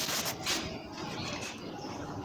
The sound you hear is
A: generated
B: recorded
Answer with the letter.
B